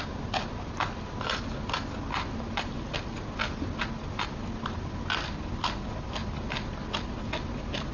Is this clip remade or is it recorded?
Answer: recorded